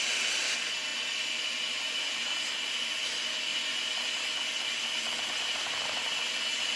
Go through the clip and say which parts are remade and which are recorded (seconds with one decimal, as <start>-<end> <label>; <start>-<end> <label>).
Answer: 0.0-6.8 recorded